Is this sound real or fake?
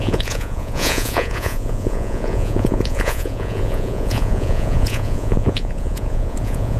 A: fake